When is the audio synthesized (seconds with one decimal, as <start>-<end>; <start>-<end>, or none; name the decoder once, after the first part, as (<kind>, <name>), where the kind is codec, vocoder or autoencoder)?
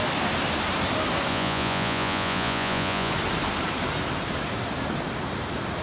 1.3-3.1 (vocoder, Vocos)